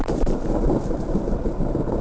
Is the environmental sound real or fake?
fake